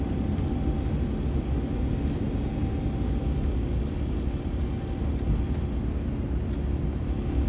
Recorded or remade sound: recorded